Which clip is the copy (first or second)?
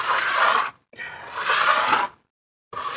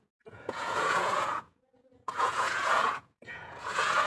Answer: second